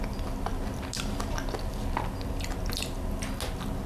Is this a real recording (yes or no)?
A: yes